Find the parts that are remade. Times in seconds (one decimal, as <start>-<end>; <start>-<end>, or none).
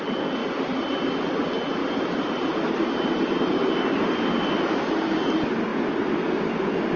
none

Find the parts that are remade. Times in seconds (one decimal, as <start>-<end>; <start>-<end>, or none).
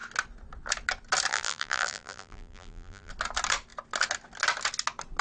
1.3-3.1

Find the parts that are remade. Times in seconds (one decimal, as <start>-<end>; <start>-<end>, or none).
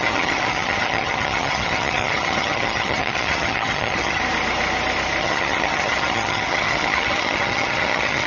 0.0-4.2; 5.2-8.3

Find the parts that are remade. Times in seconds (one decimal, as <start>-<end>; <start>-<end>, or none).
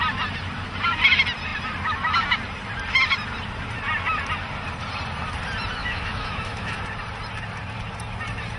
5.8-6.8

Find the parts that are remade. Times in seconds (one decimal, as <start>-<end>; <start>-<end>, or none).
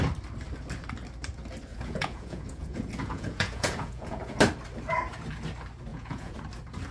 1.7-4.4; 5.9-6.4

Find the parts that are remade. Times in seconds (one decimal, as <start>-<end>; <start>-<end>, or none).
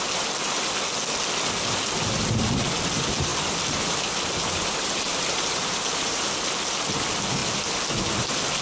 3.3-6.3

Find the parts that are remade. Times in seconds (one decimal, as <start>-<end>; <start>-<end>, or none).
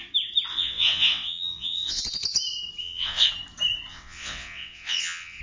0.5-2.0; 2.8-3.3; 3.9-5.4